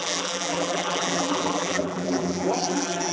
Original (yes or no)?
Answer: no